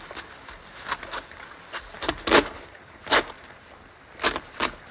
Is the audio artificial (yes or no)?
no